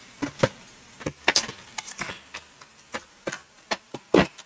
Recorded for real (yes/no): yes